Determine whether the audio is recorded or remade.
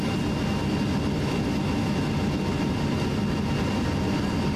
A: recorded